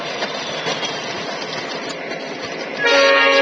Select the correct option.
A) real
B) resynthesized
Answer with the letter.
A